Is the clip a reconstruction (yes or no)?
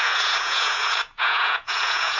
yes